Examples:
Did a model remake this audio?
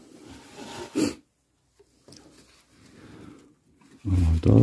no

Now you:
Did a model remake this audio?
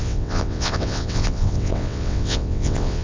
yes